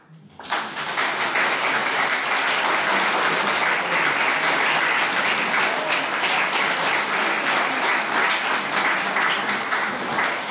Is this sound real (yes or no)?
yes